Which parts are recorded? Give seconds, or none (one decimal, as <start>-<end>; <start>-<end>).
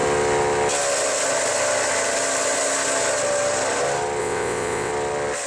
0.0-4.2; 4.9-5.5